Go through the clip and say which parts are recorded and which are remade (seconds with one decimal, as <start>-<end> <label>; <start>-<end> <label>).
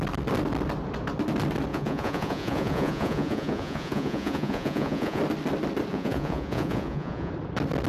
0.0-1.7 recorded; 1.7-5.2 remade; 5.2-5.9 recorded; 5.9-7.3 remade; 7.3-7.9 recorded